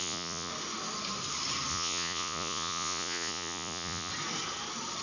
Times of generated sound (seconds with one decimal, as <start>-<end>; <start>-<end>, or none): 0.0-0.5; 1.7-4.1